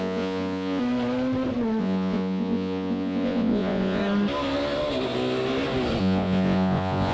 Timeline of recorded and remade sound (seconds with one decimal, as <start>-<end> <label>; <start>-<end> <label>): 0.0-0.8 remade; 0.8-1.8 recorded; 1.8-4.0 remade; 4.0-6.0 recorded; 6.0-7.1 remade